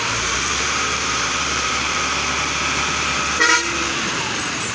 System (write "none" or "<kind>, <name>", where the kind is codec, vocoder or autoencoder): vocoder, BigVGAN v2